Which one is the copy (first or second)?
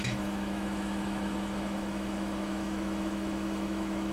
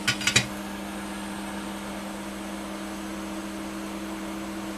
first